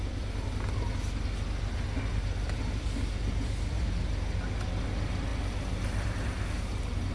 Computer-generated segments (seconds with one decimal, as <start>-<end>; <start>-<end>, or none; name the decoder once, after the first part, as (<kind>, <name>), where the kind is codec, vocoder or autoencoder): none